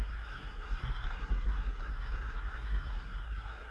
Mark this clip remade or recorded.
remade